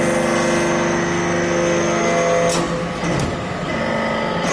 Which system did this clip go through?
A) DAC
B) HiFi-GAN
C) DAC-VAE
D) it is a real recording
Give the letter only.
D